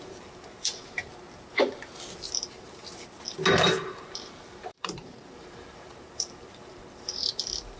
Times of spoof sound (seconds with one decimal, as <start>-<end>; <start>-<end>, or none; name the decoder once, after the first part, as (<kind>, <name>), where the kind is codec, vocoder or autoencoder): 0.0-1.1 (vocoder, BigVGAN v2); 2.3-2.8; 3.5-7.8